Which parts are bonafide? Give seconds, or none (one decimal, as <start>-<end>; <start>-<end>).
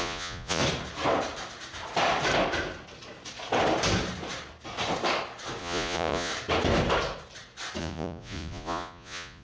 0.6-5.6; 6.3-7.8